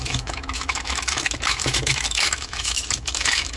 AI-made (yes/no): yes